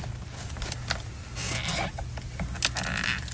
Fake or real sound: real